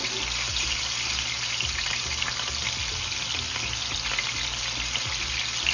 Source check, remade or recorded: recorded